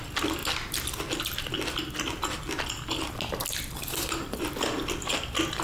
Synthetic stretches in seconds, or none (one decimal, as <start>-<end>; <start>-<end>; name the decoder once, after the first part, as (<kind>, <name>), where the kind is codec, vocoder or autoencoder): none